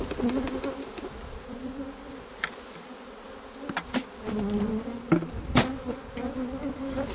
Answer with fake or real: real